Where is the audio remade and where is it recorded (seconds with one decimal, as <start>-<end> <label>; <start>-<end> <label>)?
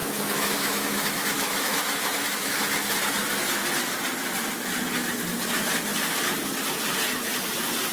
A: 0.0-2.6 remade; 2.6-7.9 recorded